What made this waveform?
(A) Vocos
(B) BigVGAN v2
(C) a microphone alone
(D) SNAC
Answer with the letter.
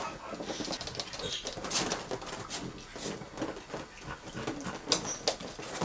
C